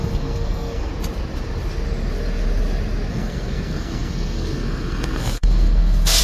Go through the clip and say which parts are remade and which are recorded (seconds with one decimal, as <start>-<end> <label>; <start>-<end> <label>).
0.0-0.9 remade; 0.9-3.1 recorded; 3.1-6.2 remade